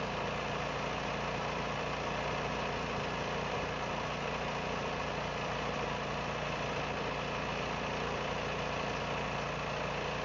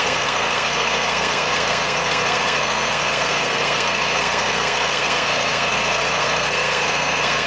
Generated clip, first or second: second